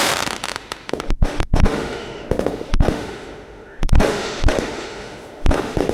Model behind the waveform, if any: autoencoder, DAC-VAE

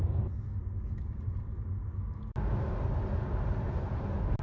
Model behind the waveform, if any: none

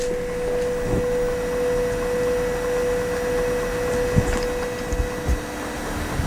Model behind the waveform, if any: none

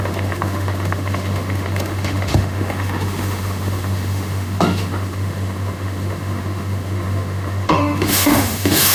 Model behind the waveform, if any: autoencoder, DAC-VAE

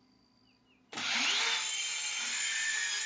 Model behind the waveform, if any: none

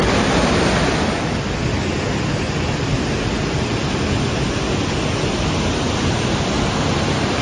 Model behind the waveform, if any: none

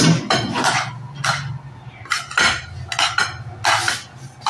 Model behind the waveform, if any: none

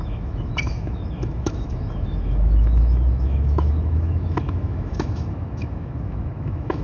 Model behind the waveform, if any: autoencoder, DAC-VAE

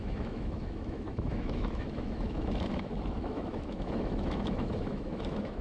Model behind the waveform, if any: autoencoder, DAC-VAE